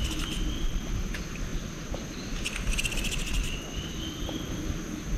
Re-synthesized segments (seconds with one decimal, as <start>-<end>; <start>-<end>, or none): none